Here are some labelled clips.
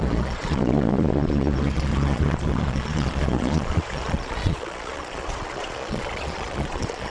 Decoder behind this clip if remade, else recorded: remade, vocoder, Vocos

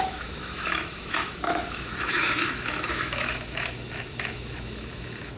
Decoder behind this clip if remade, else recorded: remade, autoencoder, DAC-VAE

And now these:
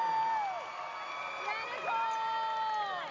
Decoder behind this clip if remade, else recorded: recorded